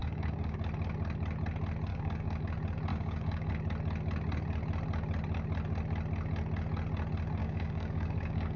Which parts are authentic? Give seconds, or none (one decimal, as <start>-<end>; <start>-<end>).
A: 0.6-1.9; 2.4-2.9; 3.5-7.4